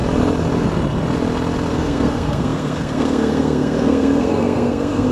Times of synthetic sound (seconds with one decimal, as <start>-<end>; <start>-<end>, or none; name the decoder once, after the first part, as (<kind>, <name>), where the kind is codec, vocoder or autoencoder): 1.7-5.1 (codec, SNAC)